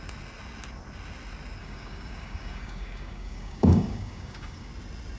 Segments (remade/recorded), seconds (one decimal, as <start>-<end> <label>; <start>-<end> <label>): 0.0-1.6 recorded; 1.6-4.7 remade; 4.7-5.2 recorded